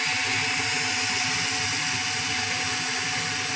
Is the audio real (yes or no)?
yes